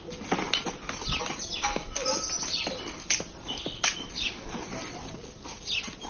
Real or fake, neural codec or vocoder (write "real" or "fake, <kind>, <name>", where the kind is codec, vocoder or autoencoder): real